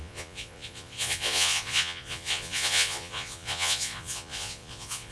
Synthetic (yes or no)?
yes